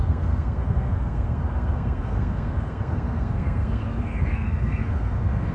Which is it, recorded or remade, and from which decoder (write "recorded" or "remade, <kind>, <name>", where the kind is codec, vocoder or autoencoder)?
remade, codec, SNAC